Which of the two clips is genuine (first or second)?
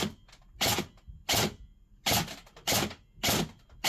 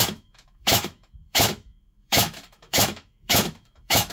first